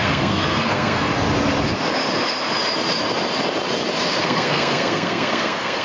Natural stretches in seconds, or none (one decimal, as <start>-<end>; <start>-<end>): 1.1-4.2